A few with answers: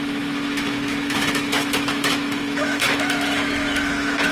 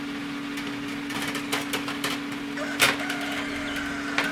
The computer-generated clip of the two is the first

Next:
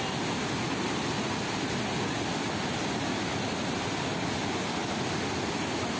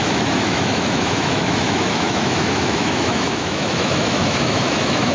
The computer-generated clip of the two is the second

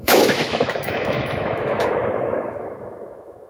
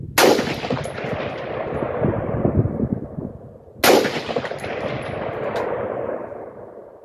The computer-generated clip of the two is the first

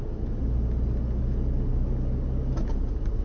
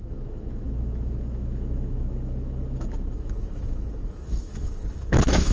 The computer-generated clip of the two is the second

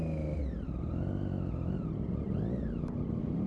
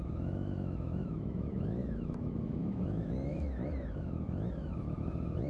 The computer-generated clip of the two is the second